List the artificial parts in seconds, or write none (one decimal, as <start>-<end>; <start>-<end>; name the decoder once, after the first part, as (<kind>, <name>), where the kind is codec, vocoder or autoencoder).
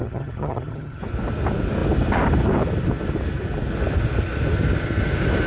0.0-1.0 (vocoder, HiFi-GAN)